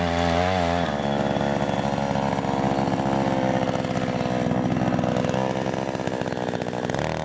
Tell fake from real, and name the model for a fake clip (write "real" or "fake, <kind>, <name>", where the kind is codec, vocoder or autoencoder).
real